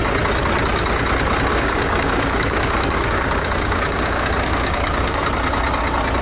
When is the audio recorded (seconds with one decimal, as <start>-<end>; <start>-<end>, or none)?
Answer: 0.0-1.5; 5.2-6.2

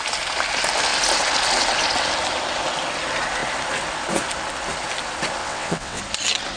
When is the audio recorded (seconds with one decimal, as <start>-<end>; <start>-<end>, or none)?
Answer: 0.0-5.4; 6.0-6.6

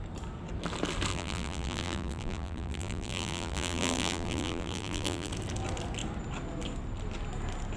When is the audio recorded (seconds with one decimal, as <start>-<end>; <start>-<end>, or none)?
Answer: 0.0-1.1; 5.3-7.8

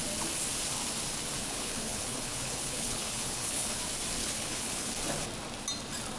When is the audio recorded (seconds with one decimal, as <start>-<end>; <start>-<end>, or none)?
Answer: 0.0-1.4; 3.8-4.2; 4.9-6.2

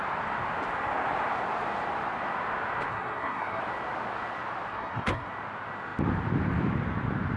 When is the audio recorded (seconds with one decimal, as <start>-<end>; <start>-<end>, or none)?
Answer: 0.0-2.9; 3.6-4.7; 5.3-7.4

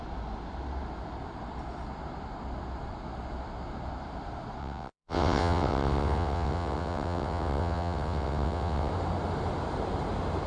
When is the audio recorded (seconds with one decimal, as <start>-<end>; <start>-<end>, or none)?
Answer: 0.0-4.6; 8.9-10.5

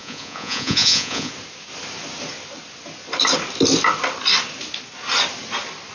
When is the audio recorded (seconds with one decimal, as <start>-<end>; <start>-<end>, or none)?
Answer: 1.3-5.9

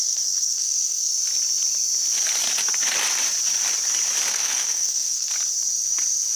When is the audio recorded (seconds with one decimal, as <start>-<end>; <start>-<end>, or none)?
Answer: 1.1-4.3; 5.3-6.4